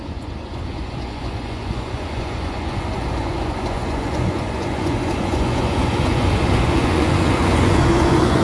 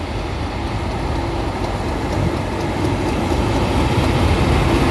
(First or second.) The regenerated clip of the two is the first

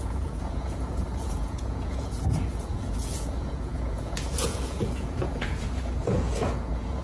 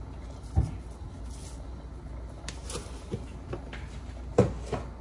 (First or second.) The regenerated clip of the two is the first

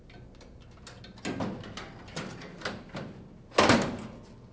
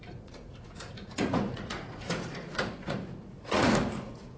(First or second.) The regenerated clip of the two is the second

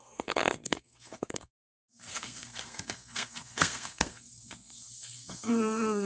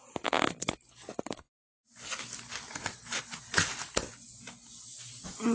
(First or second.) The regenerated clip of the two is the first